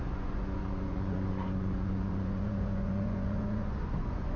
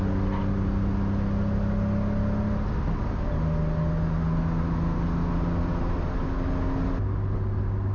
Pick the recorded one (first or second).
second